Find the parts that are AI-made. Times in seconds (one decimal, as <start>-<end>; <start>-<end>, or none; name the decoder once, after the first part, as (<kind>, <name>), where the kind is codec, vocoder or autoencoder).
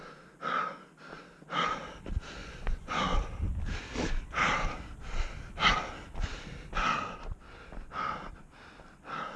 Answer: 2.4-3.0 (vocoder, Vocos)